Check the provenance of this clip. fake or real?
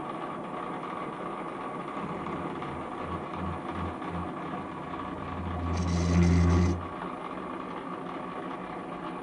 real